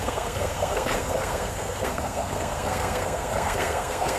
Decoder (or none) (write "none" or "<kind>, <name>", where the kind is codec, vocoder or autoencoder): codec, SNAC